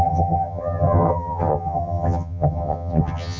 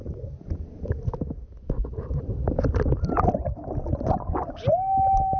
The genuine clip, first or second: second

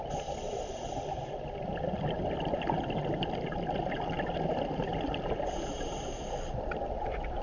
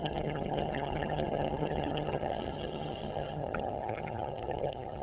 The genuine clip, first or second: first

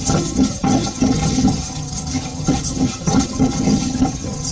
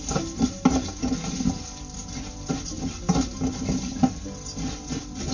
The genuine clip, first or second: second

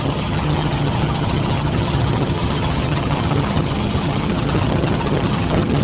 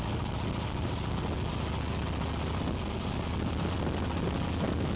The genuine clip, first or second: second